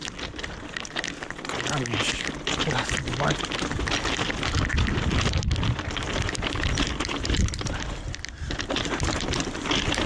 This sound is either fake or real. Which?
real